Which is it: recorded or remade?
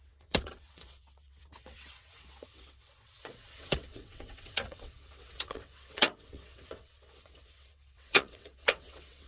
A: remade